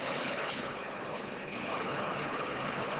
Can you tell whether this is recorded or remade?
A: remade